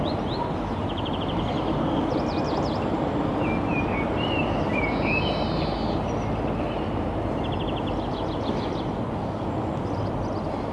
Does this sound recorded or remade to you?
recorded